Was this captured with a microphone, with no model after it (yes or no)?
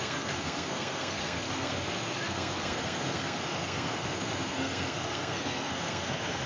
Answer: no